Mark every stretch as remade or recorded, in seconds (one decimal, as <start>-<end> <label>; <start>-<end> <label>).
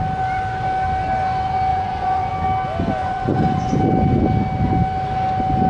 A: 0.0-1.7 recorded; 1.7-2.3 remade; 2.3-3.0 recorded; 3.0-3.7 remade; 3.7-5.7 recorded